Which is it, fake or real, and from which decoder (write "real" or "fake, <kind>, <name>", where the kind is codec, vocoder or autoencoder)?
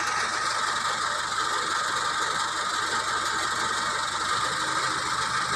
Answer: real